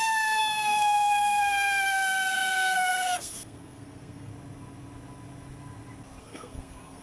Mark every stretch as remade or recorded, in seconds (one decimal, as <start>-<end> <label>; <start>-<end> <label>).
0.0-4.3 remade; 4.3-6.2 recorded; 6.2-7.0 remade